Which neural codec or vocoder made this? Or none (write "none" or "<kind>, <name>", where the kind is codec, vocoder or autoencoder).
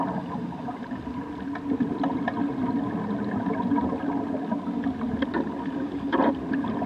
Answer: none